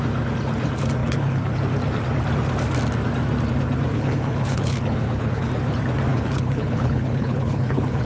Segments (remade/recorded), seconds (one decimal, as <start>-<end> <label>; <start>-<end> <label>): 0.0-1.0 recorded; 1.0-1.6 remade; 1.6-3.9 recorded; 3.9-5.5 remade; 5.5-6.1 recorded; 6.1-8.0 remade